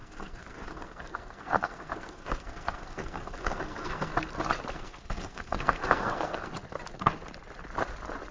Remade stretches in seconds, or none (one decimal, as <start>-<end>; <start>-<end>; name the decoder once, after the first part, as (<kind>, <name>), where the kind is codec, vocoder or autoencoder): 0.0-4.1 (codec, SNAC); 4.7-6.5